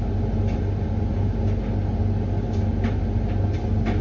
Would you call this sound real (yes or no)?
yes